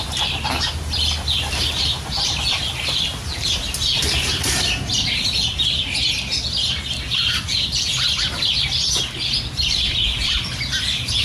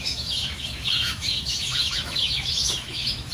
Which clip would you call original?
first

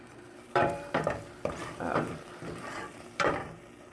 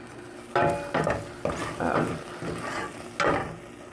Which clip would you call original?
second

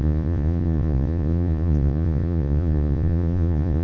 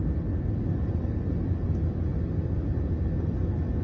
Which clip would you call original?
second